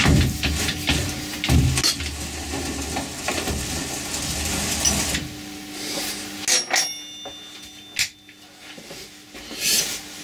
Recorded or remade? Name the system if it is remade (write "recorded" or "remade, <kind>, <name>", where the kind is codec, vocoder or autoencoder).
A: recorded